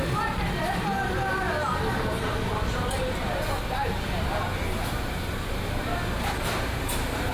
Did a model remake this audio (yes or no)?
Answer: no